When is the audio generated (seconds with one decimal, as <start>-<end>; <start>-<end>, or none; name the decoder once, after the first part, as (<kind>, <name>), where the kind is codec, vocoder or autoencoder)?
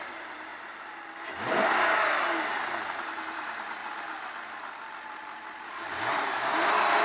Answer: 0.0-0.5 (vocoder, BigVGAN v2); 2.6-3.8; 4.8-7.0